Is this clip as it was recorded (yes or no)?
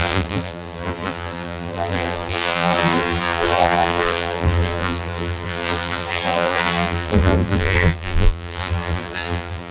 no